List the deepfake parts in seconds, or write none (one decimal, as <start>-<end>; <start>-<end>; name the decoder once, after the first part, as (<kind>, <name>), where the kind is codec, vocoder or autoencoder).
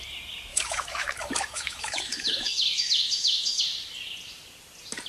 0.5-3.6 (autoencoder, DAC-VAE)